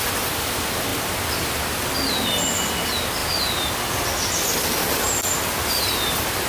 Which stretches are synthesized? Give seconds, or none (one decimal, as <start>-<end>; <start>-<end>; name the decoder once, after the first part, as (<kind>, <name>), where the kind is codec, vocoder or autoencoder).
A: none